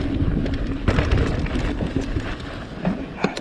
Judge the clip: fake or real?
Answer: real